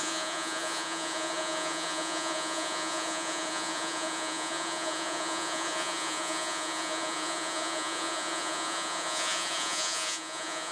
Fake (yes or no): yes